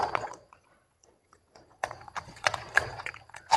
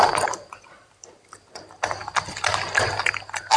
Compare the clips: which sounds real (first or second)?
second